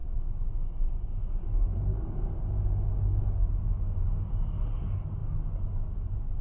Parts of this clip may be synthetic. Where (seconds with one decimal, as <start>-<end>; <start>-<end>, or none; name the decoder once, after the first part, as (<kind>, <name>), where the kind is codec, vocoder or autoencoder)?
none

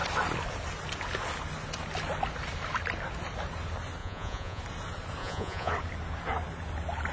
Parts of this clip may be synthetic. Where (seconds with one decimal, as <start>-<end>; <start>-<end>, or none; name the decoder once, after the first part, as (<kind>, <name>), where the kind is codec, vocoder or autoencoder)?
4.0-4.6 (vocoder, Vocos); 5.2-5.7

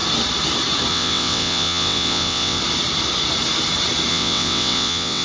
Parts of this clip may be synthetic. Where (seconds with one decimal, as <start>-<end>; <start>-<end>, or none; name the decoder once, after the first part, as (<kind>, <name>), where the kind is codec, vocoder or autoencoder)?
0.9-2.6 (vocoder, WaveNeXt); 4.1-5.2